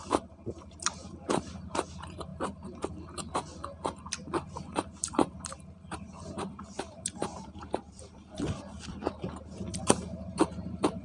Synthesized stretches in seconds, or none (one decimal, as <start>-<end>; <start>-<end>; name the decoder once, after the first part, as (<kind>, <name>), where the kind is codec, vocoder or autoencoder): 0.0-2.3 (vocoder, BigVGAN v2); 4.5-11.0